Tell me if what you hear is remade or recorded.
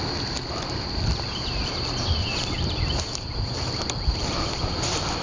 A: recorded